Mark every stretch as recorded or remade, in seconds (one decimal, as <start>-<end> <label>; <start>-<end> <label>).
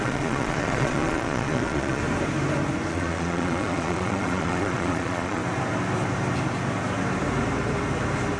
0.0-2.0 remade; 2.0-2.9 recorded; 2.9-5.4 remade; 5.4-8.4 recorded